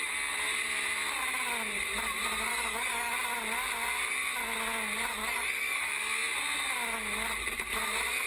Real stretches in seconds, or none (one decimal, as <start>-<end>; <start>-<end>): 0.0-2.5; 3.1-5.2; 5.9-8.3